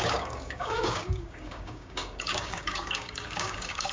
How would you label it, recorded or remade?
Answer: remade